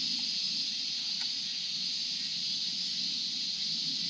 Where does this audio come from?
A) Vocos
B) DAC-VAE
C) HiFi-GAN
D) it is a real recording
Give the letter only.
D